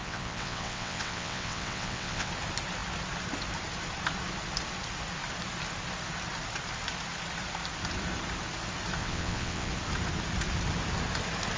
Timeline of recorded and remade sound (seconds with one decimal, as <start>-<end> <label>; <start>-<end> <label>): 0.0-2.3 remade; 2.3-9.0 recorded; 9.0-9.7 remade; 9.7-11.6 recorded